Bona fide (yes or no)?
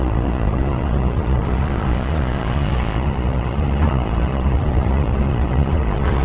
no